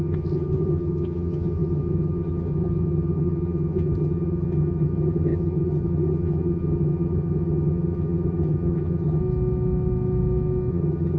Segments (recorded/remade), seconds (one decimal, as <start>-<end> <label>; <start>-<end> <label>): 0.0-9.2 remade; 9.2-10.7 recorded; 10.7-11.2 remade